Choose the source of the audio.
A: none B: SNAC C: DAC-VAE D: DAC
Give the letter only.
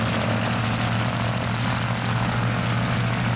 A